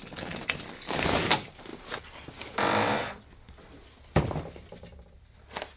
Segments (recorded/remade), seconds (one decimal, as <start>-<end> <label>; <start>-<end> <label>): 0.0-5.8 recorded